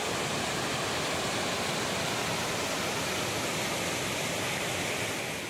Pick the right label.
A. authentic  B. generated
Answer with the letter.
A